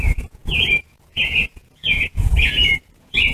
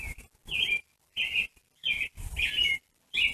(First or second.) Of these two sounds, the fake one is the first